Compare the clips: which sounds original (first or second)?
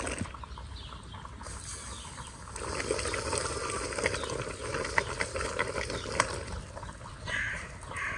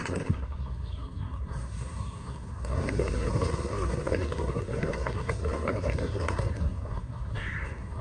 first